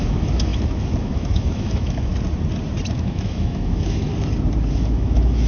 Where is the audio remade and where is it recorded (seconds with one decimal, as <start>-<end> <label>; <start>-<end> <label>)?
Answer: 0.0-2.1 remade; 2.1-2.9 recorded; 2.9-4.1 remade; 4.1-4.7 recorded; 4.7-5.5 remade